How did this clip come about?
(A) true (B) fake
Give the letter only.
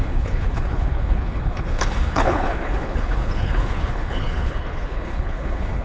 B